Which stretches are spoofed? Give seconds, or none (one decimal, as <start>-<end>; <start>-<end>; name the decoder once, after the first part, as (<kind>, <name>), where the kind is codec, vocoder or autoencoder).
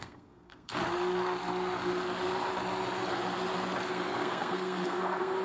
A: 0.0-0.7 (codec, SNAC); 3.9-5.4